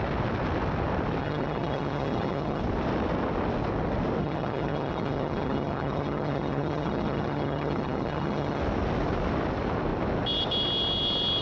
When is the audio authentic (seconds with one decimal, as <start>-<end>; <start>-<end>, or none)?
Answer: 0.0-1.2; 2.6-4.2; 8.6-11.4